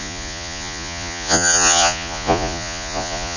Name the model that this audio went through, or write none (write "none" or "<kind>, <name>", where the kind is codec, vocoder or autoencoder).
vocoder, Vocos